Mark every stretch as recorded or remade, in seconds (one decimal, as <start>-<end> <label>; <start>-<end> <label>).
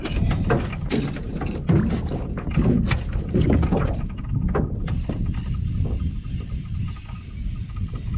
0.0-8.2 recorded